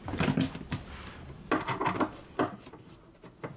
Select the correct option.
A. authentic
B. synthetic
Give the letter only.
A